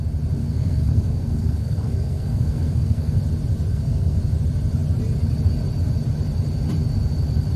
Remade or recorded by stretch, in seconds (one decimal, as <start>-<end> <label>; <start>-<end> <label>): 0.0-0.4 recorded; 0.4-3.2 remade; 3.2-3.7 recorded; 3.7-4.2 remade; 4.2-7.6 recorded